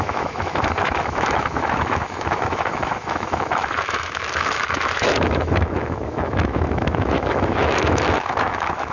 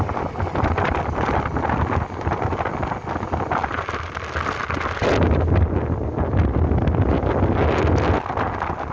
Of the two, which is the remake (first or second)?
first